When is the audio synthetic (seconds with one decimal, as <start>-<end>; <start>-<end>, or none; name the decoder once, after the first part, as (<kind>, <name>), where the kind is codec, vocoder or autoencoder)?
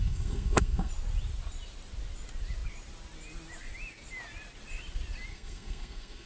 0.0-0.9 (codec, SNAC); 5.3-6.3